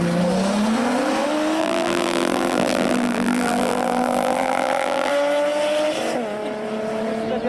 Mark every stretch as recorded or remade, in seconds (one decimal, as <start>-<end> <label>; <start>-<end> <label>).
0.0-1.6 recorded; 1.6-5.1 remade; 5.1-7.5 recorded